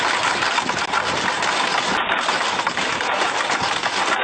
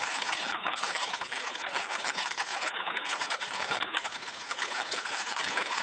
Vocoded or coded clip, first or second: second